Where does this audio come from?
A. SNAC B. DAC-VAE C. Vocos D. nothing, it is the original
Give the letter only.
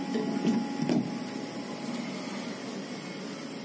D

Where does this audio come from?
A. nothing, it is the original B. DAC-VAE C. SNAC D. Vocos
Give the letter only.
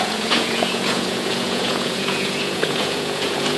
D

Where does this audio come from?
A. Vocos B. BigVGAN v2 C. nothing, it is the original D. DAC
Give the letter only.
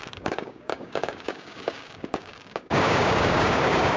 D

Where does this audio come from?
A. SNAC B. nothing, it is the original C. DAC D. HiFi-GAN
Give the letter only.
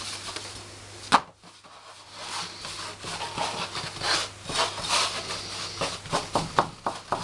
B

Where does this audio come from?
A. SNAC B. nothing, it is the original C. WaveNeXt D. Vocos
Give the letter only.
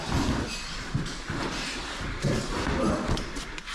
B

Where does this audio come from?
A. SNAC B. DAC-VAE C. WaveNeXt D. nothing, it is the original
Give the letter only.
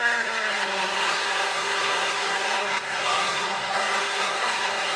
A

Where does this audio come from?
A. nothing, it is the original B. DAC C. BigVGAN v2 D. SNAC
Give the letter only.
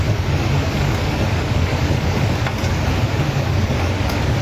B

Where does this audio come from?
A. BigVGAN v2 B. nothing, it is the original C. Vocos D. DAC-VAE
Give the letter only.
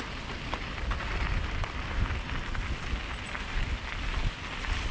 B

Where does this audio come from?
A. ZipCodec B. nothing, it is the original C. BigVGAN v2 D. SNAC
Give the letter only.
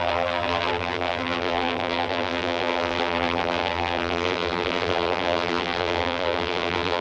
C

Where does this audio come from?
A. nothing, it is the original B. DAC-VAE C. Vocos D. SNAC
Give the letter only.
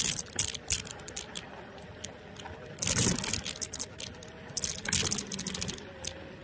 A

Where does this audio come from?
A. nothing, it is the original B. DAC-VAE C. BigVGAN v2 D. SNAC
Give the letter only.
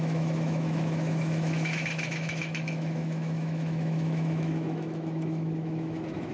B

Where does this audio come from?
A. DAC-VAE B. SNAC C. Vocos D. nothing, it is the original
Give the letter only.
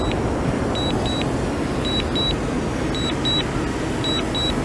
D